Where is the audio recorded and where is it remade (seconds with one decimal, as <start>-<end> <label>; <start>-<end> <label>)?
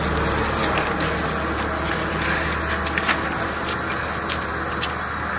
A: 0.0-5.4 recorded